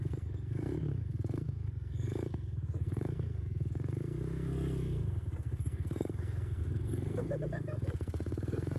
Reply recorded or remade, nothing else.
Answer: remade